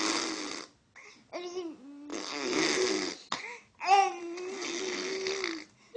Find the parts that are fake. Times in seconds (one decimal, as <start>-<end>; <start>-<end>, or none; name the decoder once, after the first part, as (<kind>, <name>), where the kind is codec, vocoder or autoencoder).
none